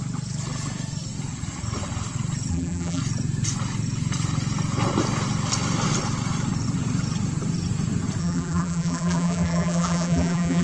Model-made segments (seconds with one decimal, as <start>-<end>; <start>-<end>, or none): 2.5-3.0; 8.2-10.6